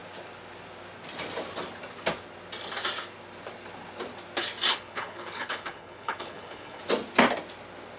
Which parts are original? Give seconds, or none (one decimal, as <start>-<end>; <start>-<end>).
0.0-4.7; 6.8-8.0

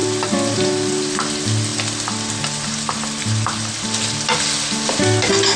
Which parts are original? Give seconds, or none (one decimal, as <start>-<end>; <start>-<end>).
0.0-5.6

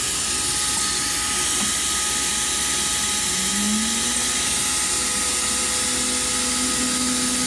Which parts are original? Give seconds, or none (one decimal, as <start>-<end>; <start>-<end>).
0.0-7.5

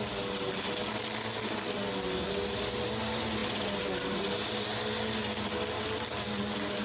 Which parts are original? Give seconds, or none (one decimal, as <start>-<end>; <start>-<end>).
0.0-6.8

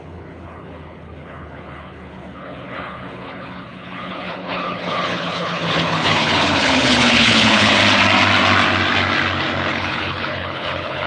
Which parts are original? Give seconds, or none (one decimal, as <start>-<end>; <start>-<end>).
7.8-9.7